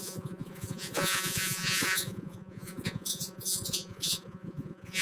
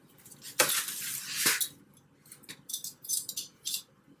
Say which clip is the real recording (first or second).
second